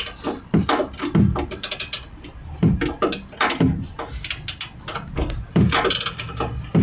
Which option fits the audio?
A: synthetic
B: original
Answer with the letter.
B